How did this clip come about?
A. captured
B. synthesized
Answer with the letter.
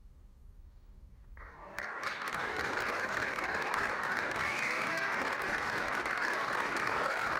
B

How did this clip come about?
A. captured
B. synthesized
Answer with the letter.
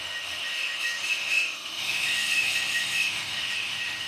B